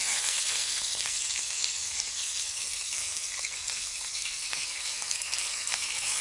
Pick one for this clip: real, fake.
fake